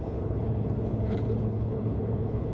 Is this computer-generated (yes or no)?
yes